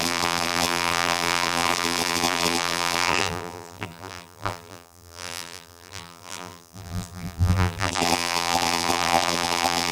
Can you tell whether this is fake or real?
fake